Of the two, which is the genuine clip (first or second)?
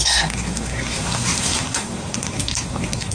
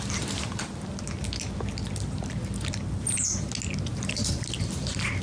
second